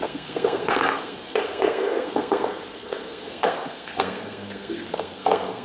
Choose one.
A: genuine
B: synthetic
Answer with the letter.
B